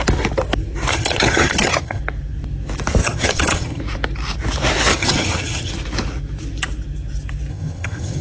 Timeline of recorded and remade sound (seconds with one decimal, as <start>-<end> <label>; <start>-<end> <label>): 0.0-0.9 recorded; 0.9-2.0 remade; 2.0-3.0 recorded; 3.0-3.8 remade; 3.8-4.9 recorded; 4.9-5.7 remade; 5.7-7.5 recorded; 7.5-8.2 remade